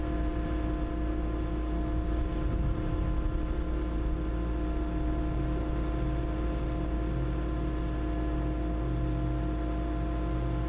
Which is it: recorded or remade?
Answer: recorded